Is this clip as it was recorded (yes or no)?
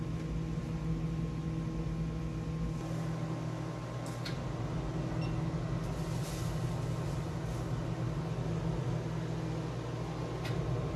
yes